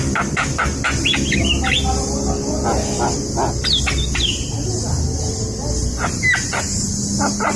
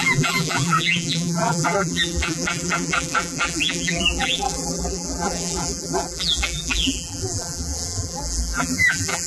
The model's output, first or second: second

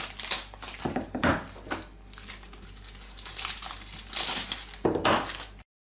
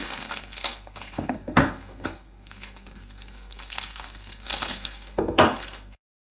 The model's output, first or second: second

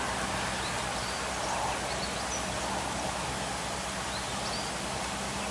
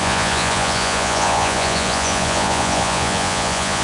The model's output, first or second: second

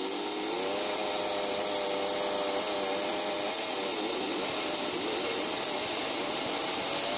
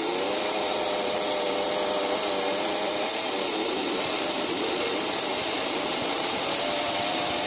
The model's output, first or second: second